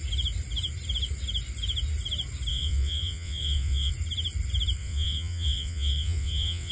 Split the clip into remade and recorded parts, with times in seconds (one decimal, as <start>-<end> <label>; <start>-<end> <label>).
0.0-2.5 recorded; 2.5-3.9 remade; 3.9-4.8 recorded; 4.8-6.7 remade